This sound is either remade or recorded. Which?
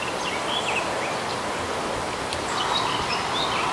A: recorded